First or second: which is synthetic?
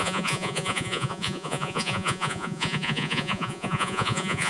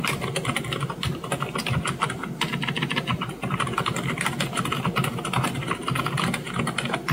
first